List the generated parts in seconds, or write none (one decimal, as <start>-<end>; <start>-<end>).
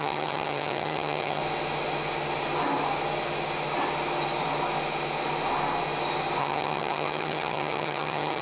0.0-1.4; 6.4-8.4